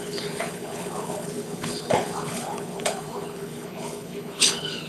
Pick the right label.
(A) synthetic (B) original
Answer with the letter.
A